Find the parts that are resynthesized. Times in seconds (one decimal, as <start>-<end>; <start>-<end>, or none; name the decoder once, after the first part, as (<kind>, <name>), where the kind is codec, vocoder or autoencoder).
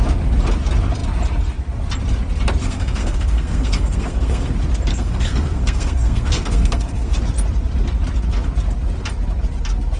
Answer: 2.6-4.5 (codec, SNAC); 4.9-7.2